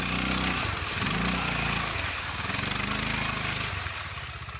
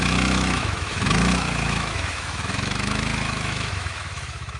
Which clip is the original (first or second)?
first